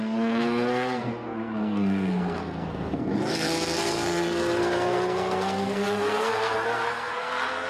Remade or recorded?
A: remade